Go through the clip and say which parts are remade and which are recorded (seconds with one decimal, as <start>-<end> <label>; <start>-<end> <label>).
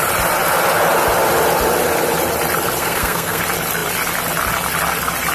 0.0-2.8 recorded; 2.8-3.4 remade; 3.4-5.3 recorded